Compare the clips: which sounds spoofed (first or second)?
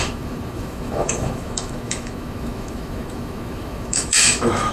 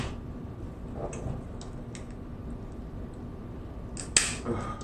first